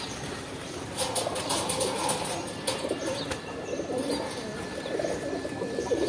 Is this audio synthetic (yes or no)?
no